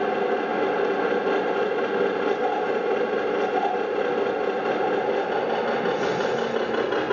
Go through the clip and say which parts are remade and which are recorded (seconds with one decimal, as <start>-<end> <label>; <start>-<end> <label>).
0.0-7.1 recorded